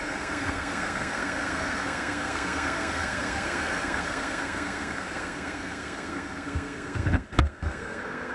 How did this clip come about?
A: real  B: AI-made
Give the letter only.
B